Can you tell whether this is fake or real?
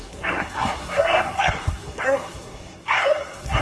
fake